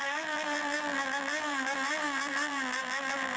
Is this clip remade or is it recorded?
remade